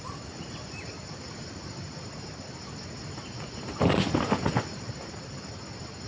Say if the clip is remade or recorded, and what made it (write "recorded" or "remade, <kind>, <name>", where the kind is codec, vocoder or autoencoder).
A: recorded